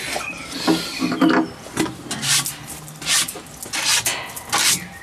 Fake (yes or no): no